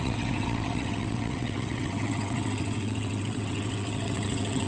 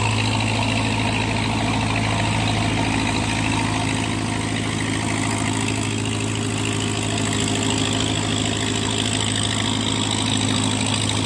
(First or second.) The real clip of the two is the second